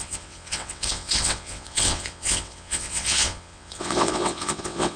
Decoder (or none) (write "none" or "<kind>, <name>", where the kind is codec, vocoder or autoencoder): vocoder, WaveNeXt